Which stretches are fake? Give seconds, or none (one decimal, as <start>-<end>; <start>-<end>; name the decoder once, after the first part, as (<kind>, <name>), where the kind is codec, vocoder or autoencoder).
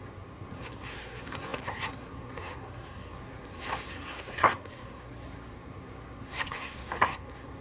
0.0-7.6 (codec, SNAC)